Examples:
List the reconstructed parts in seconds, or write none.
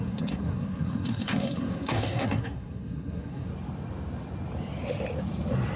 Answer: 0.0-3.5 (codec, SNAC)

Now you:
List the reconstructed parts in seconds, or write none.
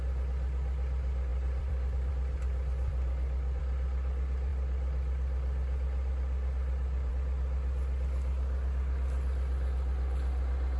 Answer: 1.3-2.1 (vocoder, BigVGAN v2); 4.5-7.1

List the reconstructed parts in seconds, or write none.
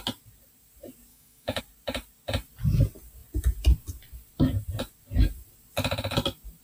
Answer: 1.1-1.6 (autoencoder, DAC-VAE)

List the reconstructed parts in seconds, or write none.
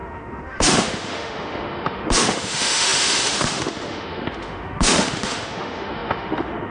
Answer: 0.0-6.7 (autoencoder, DAC-VAE)